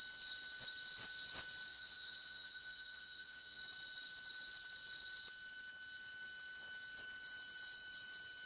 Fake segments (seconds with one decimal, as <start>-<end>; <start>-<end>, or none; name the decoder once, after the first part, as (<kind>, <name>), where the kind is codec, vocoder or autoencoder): 1.7-3.6 (vocoder, Vocos)

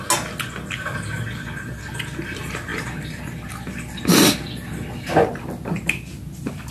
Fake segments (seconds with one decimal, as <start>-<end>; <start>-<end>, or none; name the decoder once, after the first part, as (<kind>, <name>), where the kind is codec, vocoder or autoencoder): none

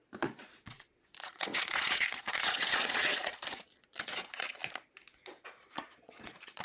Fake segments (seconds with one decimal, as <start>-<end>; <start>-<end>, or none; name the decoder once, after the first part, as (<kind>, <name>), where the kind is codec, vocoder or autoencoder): 0.0-4.6 (vocoder, Vocos); 5.5-6.6

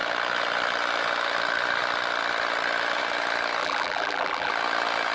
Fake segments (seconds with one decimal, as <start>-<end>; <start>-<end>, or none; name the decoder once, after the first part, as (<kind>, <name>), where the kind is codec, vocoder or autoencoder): 3.6-4.5 (vocoder, BigVGAN v2)

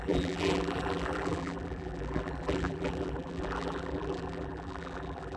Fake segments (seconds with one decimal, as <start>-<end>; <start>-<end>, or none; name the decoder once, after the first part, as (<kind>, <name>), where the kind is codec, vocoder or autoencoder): 0.0-5.4 (vocoder, BigVGAN v2)

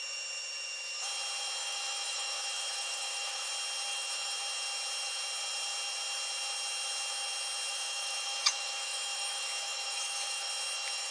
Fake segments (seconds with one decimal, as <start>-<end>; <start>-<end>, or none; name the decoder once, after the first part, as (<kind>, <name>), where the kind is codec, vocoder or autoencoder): 1.6-3.5 (autoencoder, DAC-VAE); 3.9-4.4; 7.7-10.5

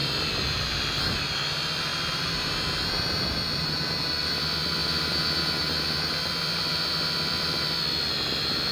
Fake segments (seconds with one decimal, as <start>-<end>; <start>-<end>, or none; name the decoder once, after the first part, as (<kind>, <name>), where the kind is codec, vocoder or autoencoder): 0.0-1.0 (vocoder, BigVGAN v2); 1.9-2.5